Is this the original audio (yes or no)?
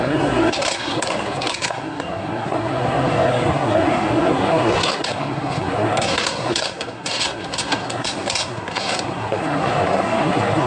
no